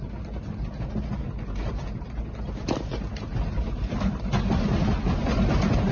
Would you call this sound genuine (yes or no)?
yes